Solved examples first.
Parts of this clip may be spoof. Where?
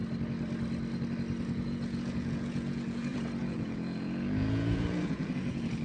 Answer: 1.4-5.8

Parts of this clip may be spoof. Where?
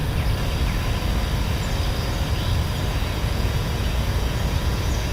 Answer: 2.9-5.1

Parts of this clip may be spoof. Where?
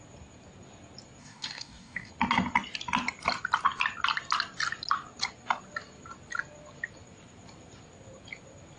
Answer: 1.2-2.1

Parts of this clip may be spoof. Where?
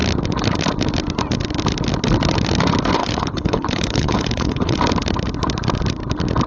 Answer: 3.0-4.8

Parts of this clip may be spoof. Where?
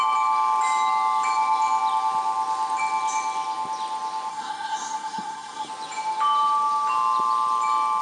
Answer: 4.3-5.7